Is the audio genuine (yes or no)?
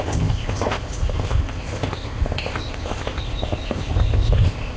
no